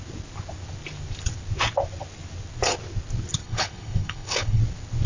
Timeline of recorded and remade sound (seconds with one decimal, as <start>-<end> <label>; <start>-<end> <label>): 0.0-3.4 recorded; 3.4-4.6 remade; 4.6-5.1 recorded